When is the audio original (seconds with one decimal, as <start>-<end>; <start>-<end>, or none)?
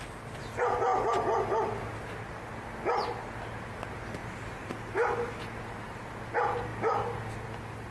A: 0.0-7.9